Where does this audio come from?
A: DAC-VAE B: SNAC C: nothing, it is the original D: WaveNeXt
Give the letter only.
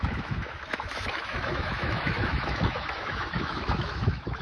A